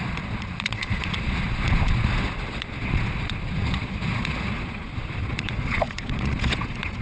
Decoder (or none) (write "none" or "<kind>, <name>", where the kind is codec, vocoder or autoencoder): vocoder, Vocos